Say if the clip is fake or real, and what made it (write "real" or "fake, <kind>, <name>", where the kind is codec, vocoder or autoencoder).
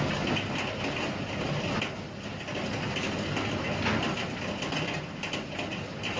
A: real